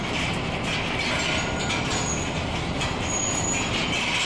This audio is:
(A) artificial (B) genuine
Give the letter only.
B